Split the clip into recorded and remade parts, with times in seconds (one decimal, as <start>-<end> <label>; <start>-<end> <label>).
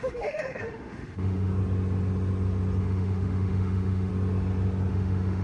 0.0-1.5 remade; 1.5-2.8 recorded; 2.8-4.1 remade; 4.1-4.9 recorded; 4.9-5.4 remade